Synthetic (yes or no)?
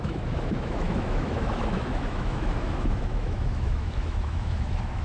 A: yes